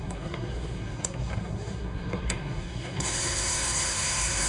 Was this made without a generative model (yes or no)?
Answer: no